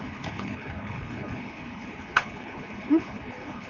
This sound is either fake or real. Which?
fake